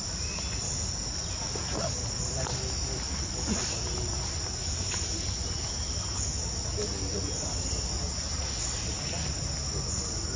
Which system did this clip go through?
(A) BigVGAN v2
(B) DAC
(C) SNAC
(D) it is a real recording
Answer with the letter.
D